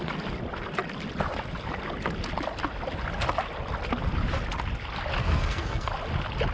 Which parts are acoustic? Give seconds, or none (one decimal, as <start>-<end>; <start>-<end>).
0.0-5.2; 5.9-6.5